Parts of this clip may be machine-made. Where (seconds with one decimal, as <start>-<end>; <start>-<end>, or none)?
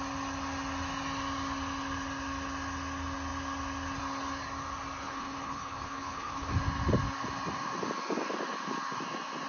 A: 5.0-6.5